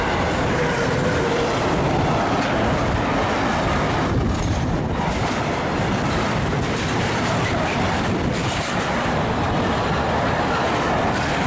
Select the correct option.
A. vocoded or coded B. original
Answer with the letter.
B